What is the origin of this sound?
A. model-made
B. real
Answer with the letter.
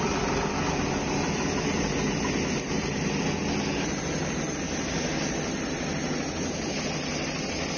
B